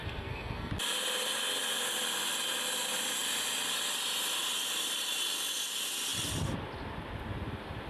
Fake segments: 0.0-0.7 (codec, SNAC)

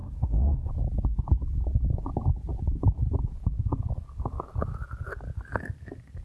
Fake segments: 0.0-0.7 (codec, SNAC)

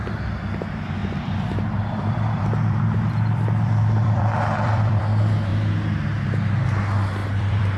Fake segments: 1.0-5.0 (vocoder, BigVGAN v2); 7.2-7.8

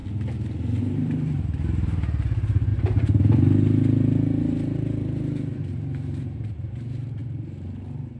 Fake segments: 0.8-2.7 (vocoder, BigVGAN v2); 4.4-8.2